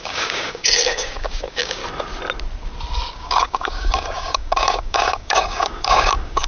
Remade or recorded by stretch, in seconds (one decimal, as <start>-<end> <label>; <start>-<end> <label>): 0.0-1.8 remade; 1.8-3.1 recorded; 3.1-6.5 remade